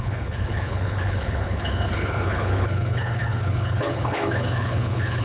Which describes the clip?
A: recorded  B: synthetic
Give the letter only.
B